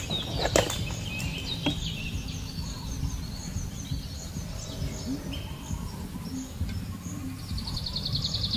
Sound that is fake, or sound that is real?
real